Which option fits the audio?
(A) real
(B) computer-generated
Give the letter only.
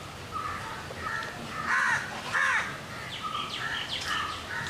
A